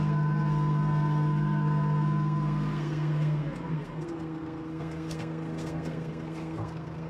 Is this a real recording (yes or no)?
no